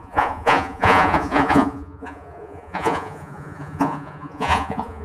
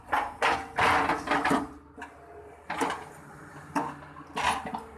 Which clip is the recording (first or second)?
second